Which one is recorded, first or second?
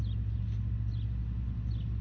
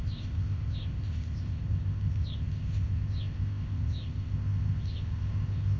first